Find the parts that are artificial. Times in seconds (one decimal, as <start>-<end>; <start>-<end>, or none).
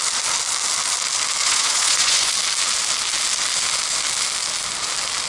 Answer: 1.4-2.3